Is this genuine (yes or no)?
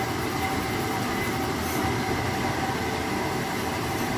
yes